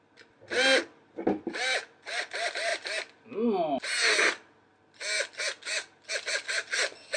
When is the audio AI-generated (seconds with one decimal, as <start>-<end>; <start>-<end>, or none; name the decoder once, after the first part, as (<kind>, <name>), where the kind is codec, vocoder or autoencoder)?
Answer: none